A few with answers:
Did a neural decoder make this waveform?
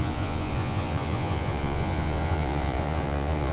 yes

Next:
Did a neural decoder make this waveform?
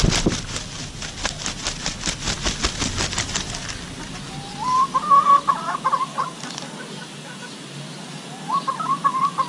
no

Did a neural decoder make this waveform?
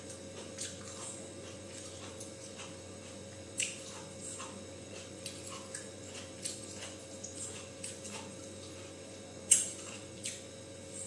yes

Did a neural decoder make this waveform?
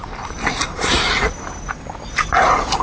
no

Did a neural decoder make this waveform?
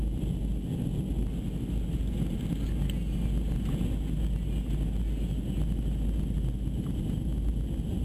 no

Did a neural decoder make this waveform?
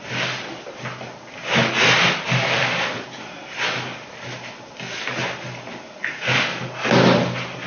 no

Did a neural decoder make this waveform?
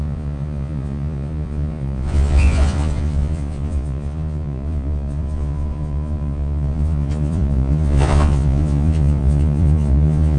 yes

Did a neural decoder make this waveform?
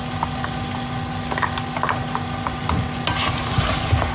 no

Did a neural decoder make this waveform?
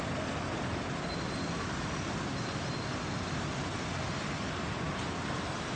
no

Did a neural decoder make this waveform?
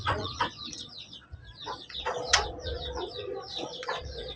yes